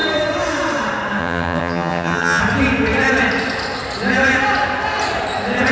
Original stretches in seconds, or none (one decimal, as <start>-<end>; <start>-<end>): 0.0-1.2; 2.4-5.7